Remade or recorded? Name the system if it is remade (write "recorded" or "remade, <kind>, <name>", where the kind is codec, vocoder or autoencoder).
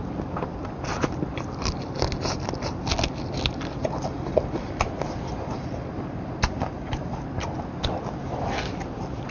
recorded